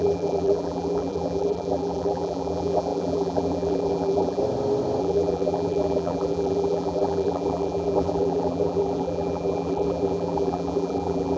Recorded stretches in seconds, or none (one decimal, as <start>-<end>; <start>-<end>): 4.4-5.0